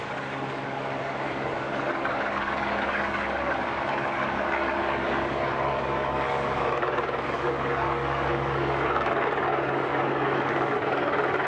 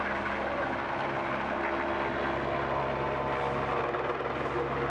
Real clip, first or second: second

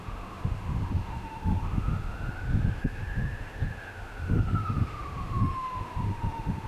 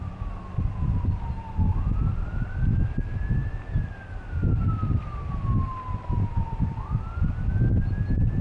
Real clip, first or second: second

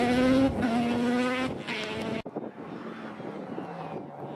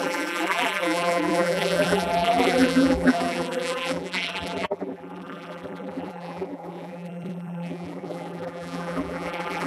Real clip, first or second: first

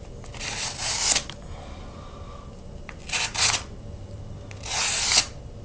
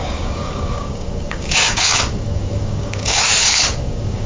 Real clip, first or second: first